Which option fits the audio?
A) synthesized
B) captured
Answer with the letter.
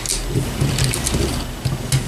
B